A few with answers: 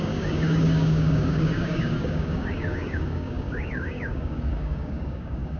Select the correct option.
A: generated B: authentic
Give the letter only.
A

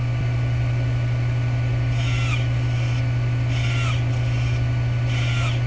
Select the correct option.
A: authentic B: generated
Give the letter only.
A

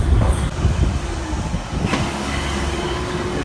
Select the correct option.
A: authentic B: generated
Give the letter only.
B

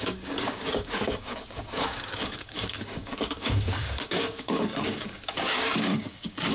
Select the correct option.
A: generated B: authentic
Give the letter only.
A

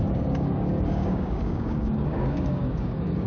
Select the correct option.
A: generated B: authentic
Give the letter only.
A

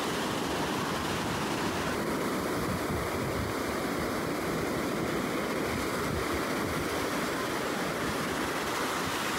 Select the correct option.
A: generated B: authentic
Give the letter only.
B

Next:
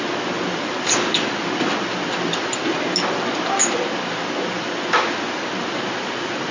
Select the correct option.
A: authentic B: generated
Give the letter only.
A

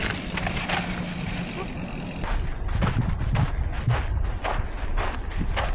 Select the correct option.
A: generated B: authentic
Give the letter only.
B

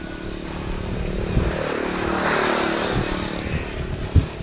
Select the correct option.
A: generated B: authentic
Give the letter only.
B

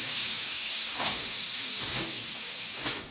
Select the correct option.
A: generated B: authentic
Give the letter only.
A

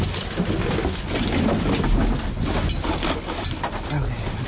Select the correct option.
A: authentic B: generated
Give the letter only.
A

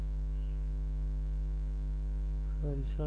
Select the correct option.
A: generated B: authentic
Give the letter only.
A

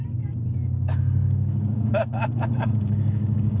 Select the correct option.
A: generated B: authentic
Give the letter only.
A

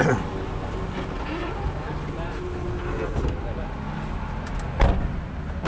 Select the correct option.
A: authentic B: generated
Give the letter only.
A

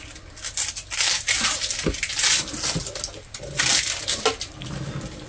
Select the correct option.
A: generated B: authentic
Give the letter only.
B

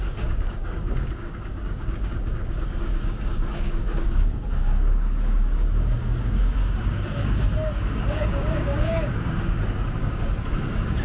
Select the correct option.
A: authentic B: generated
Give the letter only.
B